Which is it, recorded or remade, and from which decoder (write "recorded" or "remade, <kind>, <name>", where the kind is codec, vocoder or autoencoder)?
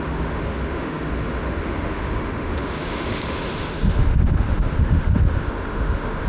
remade, autoencoder, DAC-VAE